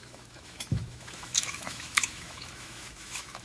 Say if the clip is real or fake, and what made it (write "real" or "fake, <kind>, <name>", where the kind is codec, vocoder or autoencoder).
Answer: fake, autoencoder, DAC-VAE